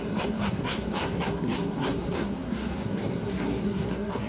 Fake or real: fake